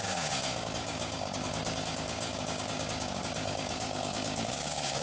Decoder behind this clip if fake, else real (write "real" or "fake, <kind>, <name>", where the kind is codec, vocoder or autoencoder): fake, codec, DAC